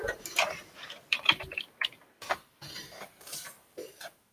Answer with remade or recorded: remade